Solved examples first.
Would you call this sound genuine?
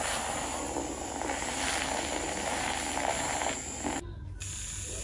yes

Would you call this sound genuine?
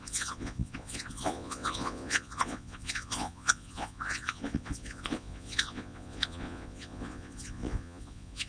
no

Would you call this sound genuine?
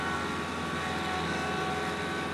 yes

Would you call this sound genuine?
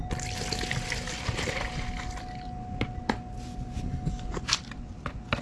yes